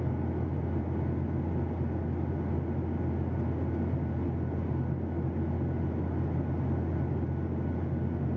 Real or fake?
real